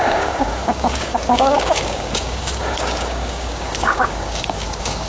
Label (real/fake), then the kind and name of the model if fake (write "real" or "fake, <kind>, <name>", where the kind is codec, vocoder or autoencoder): fake, codec, DAC